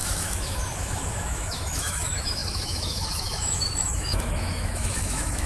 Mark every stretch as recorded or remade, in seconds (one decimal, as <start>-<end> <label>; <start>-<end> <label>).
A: 0.0-5.5 remade

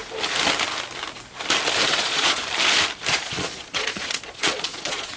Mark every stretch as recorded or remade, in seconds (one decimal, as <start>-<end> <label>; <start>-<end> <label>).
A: 0.0-1.9 recorded; 1.9-2.4 remade; 2.4-3.1 recorded; 3.1-5.2 remade

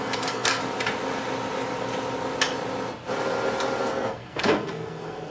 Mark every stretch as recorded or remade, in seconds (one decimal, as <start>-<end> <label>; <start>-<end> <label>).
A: 0.0-0.6 remade; 0.6-3.8 recorded; 3.8-5.3 remade

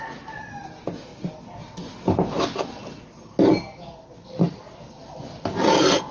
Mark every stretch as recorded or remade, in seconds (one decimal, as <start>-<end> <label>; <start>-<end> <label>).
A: 0.0-6.1 recorded

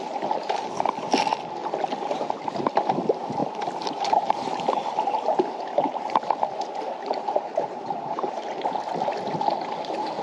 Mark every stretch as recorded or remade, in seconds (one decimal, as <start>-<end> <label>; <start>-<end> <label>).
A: 0.0-3.4 recorded; 3.4-4.6 remade; 4.6-5.9 recorded; 5.9-8.5 remade; 8.5-10.2 recorded

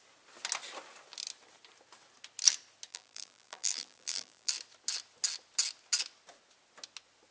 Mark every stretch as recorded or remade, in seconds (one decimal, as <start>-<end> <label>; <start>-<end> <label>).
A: 0.0-2.9 recorded; 2.9-4.5 remade; 4.5-7.3 recorded

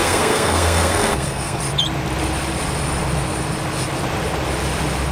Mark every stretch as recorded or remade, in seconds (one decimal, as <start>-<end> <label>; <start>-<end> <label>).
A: 0.0-1.6 remade; 1.6-5.1 recorded